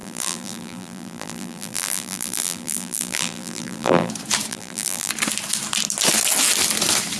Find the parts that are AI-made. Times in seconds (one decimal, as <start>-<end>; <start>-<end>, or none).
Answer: 0.0-4.1; 4.5-5.1